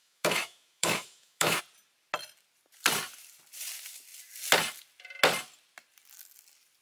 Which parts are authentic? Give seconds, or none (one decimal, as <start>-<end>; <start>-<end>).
1.6-6.8